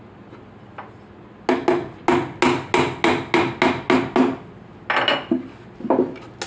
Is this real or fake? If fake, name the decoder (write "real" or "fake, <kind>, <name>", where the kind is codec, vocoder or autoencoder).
real